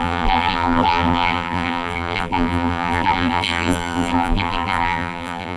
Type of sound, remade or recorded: remade